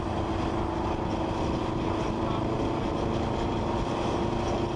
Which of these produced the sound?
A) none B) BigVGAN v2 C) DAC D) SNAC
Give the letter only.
A